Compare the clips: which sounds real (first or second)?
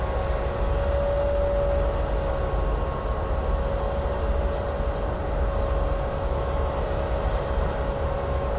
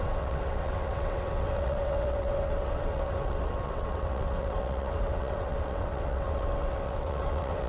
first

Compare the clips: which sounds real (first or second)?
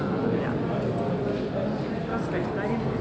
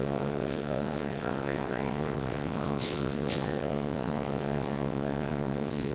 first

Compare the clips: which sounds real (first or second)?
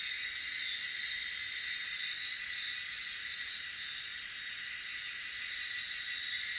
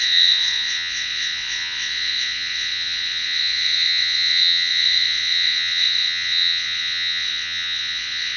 first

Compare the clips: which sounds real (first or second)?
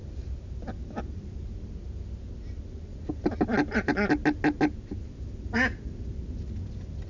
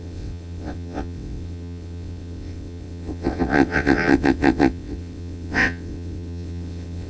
first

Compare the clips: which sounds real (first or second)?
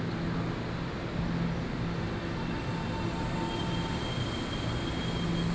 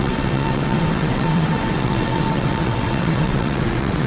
first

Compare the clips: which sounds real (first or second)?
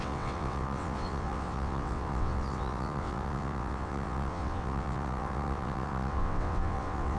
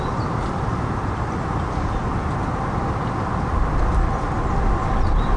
second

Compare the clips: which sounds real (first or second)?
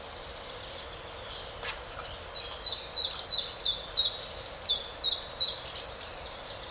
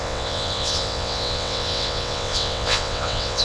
first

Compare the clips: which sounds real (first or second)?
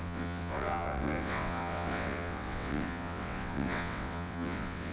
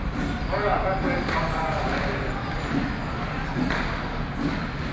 second